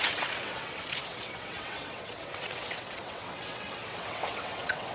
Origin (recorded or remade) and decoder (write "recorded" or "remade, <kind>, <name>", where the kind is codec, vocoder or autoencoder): remade, vocoder, WaveNeXt